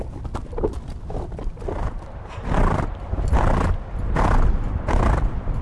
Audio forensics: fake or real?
real